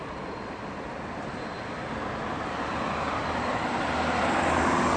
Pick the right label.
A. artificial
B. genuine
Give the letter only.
B